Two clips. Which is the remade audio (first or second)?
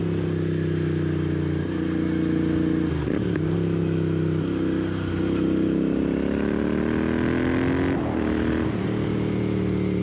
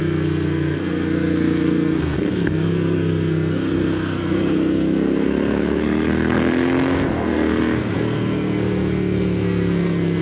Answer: second